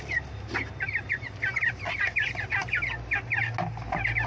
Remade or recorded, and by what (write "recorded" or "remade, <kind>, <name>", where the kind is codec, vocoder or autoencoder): recorded